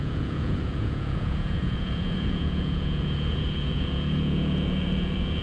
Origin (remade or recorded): remade